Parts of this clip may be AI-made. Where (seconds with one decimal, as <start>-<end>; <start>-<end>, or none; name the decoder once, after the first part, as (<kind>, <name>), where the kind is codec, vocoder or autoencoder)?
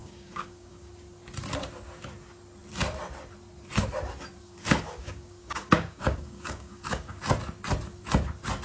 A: 0.0-0.9 (codec, DAC); 4.4-7.2